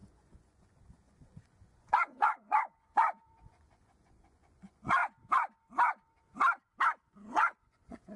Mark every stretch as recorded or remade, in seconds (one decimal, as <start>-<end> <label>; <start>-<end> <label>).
0.0-5.0 remade; 5.0-7.1 recorded; 7.1-8.2 remade